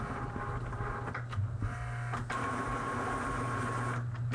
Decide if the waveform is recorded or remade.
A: recorded